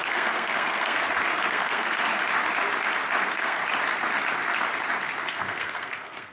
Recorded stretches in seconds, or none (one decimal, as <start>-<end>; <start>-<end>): 1.0-1.5; 2.1-3.2; 3.6-5.3